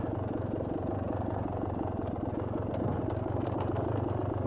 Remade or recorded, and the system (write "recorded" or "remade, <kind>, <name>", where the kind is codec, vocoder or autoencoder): recorded